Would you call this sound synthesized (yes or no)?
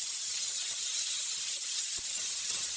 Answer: no